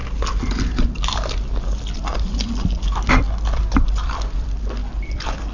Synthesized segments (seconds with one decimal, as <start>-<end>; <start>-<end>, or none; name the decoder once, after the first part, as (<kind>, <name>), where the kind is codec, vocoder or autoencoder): none